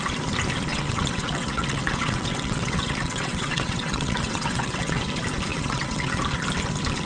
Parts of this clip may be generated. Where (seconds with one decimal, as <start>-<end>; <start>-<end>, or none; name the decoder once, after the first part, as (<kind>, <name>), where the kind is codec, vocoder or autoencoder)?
0.7-5.0 (vocoder, WaveNeXt); 5.5-6.2